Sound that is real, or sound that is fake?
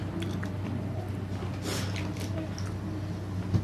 real